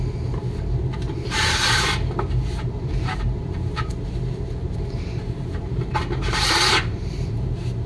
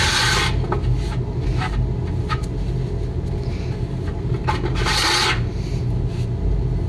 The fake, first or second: first